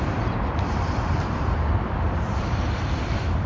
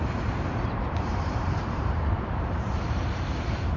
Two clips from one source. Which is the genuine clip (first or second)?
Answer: first